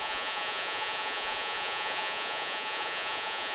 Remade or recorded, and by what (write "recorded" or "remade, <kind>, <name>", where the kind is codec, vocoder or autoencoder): remade, vocoder, Vocos